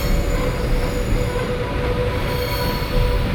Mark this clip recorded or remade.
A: recorded